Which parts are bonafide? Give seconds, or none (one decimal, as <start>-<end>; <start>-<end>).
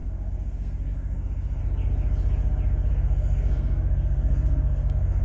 1.6-2.9